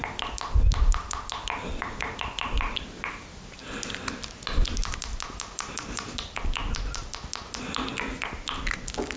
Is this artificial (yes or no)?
no